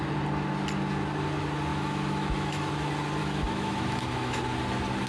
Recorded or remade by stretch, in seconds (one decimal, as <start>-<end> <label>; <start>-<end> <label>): 0.0-1.7 recorded; 1.7-2.7 remade; 2.7-3.2 recorded; 3.2-4.4 remade; 4.4-5.1 recorded